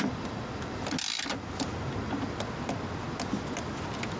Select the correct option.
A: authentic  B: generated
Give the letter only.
A